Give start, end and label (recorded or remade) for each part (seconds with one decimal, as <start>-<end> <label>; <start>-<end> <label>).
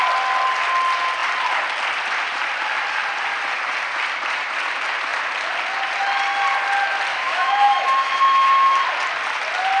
0.0-7.1 recorded; 7.1-8.8 remade; 8.8-9.8 recorded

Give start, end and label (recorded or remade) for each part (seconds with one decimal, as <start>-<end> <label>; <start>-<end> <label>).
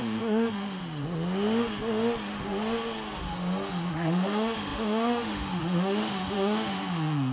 0.0-0.8 remade; 0.8-3.9 recorded; 3.9-7.3 remade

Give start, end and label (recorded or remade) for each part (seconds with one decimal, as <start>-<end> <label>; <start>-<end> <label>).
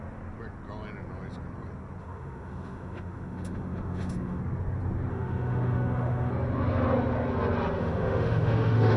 0.0-2.0 recorded; 2.0-4.4 remade; 4.4-5.1 recorded; 5.1-6.3 remade; 6.3-7.8 recorded; 7.8-9.0 remade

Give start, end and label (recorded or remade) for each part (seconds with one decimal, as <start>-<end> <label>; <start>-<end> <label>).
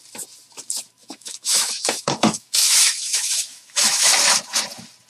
0.0-1.0 recorded; 1.0-4.1 remade; 4.1-5.1 recorded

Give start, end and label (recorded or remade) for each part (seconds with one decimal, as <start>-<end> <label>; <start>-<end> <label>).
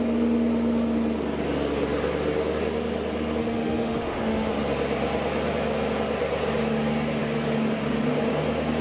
0.0-3.4 recorded; 3.4-4.5 remade; 4.5-8.8 recorded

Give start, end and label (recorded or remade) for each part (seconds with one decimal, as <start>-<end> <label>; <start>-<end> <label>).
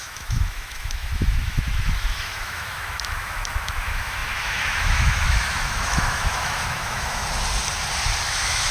0.0-7.2 remade; 7.2-8.2 recorded; 8.2-8.7 remade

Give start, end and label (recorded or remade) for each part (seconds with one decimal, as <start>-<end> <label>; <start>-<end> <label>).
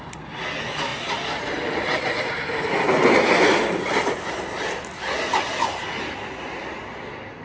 0.0-7.4 recorded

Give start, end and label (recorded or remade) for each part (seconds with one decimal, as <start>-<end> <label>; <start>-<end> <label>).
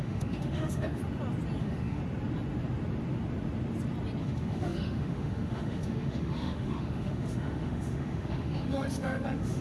0.0-1.0 remade; 1.0-1.6 recorded; 1.6-2.0 remade; 2.0-4.2 recorded; 4.2-9.6 remade